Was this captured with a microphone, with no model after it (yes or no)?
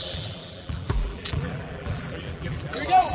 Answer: no